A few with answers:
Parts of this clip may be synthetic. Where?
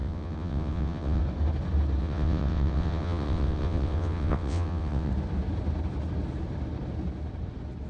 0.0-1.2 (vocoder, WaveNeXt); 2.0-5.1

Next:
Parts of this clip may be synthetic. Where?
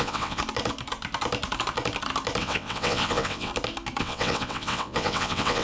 0.0-0.4 (vocoder, WaveNeXt); 2.4-3.5; 4.0-5.6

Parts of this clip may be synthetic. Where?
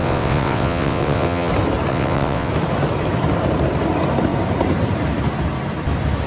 0.0-1.5 (vocoder, WaveNeXt); 1.9-2.5